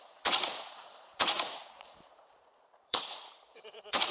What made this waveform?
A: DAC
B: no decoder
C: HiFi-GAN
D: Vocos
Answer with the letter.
D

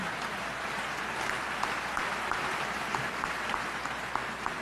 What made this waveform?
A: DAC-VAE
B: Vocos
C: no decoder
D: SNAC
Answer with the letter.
C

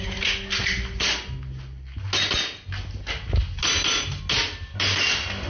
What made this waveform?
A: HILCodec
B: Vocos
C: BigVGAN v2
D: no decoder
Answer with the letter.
D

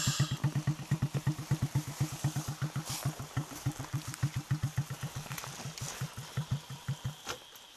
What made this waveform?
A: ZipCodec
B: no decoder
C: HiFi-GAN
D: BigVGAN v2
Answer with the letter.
B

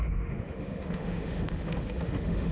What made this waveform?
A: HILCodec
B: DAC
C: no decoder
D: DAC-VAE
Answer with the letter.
D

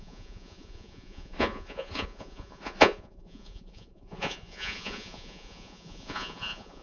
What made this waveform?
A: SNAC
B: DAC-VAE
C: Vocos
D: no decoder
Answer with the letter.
C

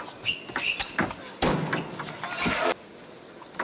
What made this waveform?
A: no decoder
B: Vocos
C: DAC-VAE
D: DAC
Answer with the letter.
A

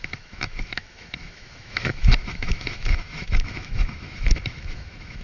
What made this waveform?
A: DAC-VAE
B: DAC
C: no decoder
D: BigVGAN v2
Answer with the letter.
A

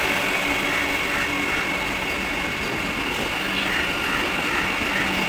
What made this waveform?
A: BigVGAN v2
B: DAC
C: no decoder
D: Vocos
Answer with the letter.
C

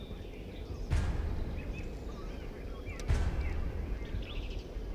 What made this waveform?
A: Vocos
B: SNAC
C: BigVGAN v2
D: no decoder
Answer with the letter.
D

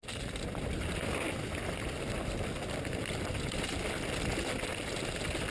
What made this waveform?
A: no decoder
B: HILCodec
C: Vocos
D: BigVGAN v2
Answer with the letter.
A